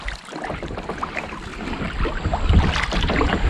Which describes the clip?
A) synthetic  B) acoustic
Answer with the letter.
B